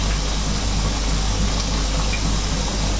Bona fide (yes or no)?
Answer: yes